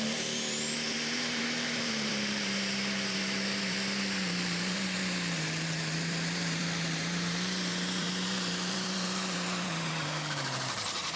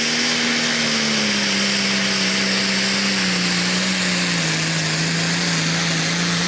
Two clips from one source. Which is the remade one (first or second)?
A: first